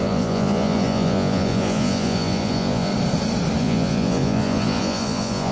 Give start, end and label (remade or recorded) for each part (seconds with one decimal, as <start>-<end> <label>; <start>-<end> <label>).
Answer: 0.0-2.9 remade; 2.9-3.6 recorded; 3.6-5.5 remade